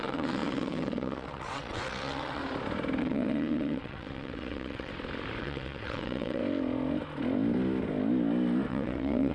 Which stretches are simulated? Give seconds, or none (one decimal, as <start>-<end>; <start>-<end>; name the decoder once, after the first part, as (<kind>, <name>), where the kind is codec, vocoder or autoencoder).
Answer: 0.0-2.4 (vocoder, WaveNeXt); 3.0-4.9; 5.4-6.4; 8.7-9.3